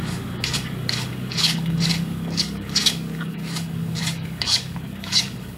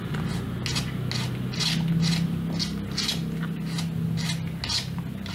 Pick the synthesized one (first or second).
first